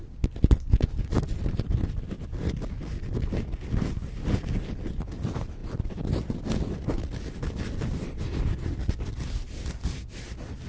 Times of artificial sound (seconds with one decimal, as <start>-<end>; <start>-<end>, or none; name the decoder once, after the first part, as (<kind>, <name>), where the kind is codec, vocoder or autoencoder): none